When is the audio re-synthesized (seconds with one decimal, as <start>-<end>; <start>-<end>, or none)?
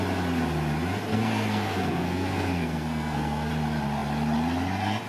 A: 1.1-3.5